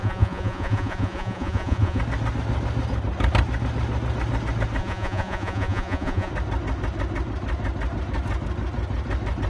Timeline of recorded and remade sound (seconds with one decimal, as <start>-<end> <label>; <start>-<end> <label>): 0.0-2.0 remade; 2.0-4.8 recorded; 4.8-6.3 remade; 6.3-9.5 recorded